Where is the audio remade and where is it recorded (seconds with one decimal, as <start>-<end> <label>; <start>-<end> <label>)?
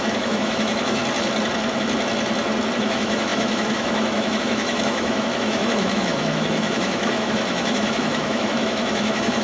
0.0-1.0 remade; 1.0-2.8 recorded; 2.8-9.4 remade